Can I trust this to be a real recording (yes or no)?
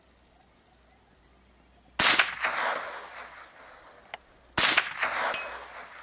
yes